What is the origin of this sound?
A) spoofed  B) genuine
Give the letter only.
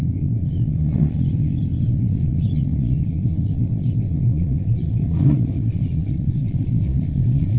A